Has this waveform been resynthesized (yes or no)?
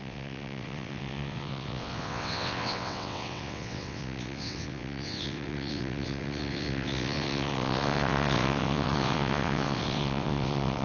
yes